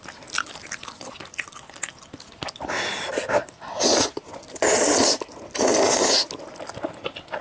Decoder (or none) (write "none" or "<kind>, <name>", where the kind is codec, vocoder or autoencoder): none